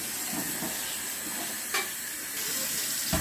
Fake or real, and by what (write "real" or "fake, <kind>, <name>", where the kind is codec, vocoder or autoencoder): real